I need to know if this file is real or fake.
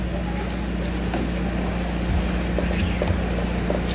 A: real